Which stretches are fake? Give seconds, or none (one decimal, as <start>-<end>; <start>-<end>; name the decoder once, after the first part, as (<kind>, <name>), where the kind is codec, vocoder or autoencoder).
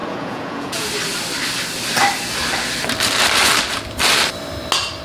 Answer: 0.0-0.9 (vocoder, Vocos)